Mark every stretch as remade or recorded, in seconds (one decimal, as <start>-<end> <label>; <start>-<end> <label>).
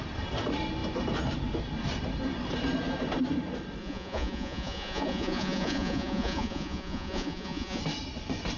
0.0-3.8 recorded; 3.8-7.8 remade; 7.8-8.6 recorded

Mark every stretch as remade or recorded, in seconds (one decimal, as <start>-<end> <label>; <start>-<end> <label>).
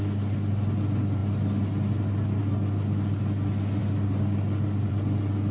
0.0-5.5 recorded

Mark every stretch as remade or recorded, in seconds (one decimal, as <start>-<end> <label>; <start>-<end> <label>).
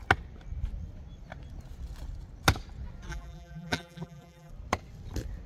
0.0-3.1 recorded; 3.1-4.5 remade; 4.5-5.5 recorded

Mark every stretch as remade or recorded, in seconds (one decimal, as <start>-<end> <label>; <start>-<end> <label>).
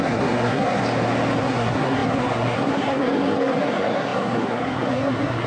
0.0-0.8 remade; 0.8-1.4 recorded; 1.4-5.5 remade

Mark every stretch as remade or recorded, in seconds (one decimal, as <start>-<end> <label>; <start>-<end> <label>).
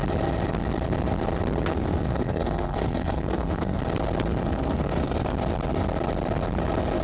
0.0-1.7 recorded; 1.7-3.8 remade; 3.8-4.4 recorded; 4.4-5.3 remade; 5.3-7.0 recorded